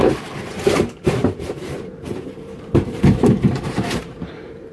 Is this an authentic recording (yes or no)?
no